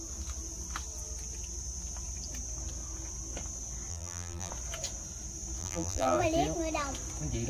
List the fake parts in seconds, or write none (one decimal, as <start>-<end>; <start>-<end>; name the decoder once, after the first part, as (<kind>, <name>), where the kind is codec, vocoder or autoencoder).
3.9-4.5 (vocoder, BigVGAN v2); 5.6-6.2